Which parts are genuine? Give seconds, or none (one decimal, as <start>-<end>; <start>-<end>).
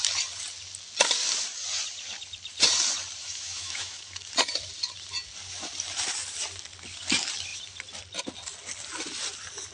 0.0-3.2; 4.3-9.7